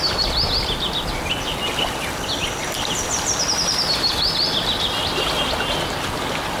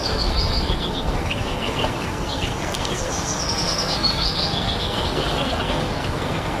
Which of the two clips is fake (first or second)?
second